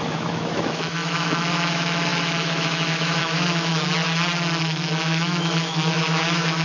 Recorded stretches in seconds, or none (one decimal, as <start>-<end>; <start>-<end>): 3.7-4.6